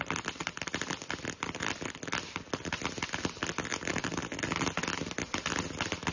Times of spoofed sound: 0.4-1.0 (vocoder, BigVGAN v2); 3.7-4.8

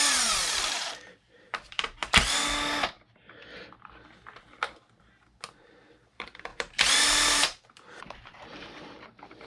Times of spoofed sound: 0.0-2.0 (vocoder, BigVGAN v2); 5.5-9.5